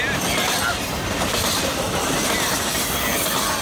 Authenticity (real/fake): real